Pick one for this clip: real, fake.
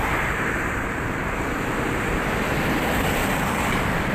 fake